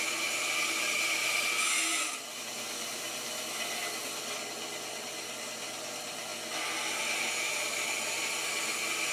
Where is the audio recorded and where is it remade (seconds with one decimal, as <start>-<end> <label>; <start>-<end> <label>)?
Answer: 0.0-9.1 recorded